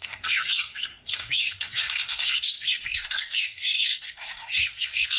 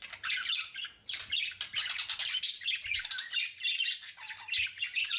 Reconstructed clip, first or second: first